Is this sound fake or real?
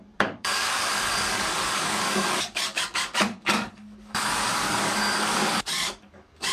fake